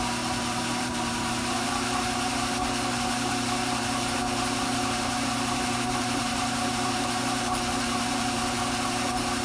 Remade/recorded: remade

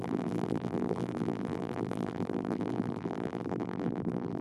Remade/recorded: remade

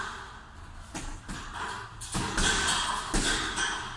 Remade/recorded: recorded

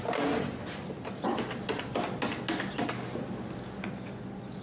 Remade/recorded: recorded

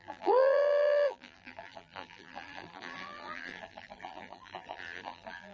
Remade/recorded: remade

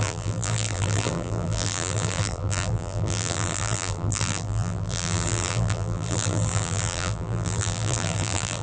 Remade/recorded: remade